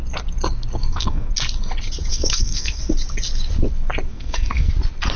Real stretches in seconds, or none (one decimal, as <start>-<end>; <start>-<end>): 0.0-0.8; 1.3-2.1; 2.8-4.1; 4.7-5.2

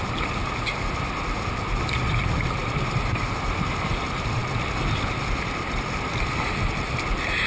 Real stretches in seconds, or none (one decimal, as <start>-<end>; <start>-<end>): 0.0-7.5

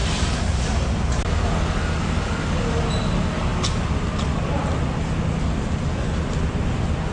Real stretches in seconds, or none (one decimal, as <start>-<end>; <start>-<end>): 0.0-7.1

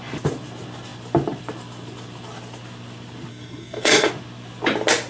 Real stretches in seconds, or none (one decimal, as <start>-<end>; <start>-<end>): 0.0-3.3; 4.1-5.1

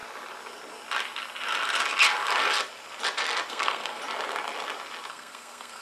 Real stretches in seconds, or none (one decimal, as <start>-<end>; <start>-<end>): 0.0-3.5; 4.0-5.1

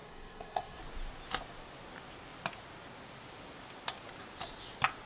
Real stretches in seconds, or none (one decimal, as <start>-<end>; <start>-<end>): 0.8-5.1

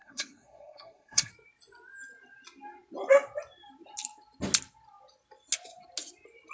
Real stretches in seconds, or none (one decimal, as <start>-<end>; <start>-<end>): 1.3-6.5

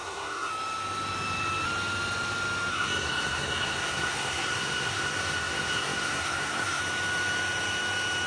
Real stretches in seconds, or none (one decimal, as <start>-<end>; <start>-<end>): 0.5-2.7; 6.8-8.3